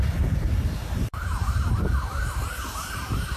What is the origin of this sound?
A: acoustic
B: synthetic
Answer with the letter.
B